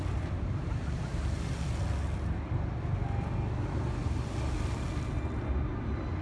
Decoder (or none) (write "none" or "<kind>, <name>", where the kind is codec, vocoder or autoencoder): none